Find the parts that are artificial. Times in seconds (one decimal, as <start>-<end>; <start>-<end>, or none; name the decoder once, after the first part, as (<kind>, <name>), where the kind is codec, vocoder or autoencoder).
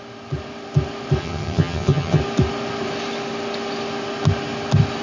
1.2-2.2 (vocoder, HiFi-GAN)